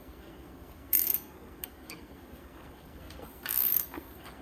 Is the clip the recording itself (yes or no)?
no